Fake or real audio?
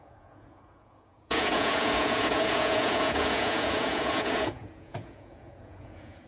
fake